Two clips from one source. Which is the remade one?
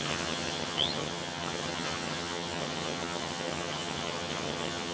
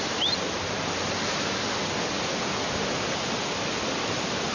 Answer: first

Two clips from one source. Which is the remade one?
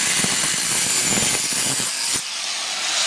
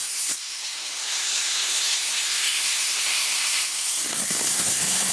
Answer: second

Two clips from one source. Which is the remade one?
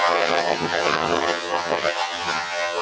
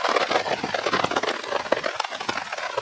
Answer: first